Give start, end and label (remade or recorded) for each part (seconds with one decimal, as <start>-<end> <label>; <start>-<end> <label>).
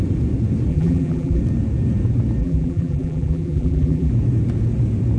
0.0-0.7 recorded; 0.7-1.4 remade; 1.4-2.4 recorded; 2.4-4.1 remade; 4.1-5.2 recorded